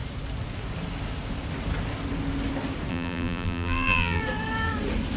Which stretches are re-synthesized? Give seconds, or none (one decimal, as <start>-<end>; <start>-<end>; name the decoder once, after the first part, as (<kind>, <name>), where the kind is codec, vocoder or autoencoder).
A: 2.9-4.2 (vocoder, BigVGAN v2)